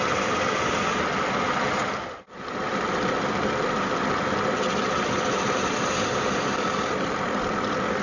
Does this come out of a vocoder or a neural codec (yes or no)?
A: no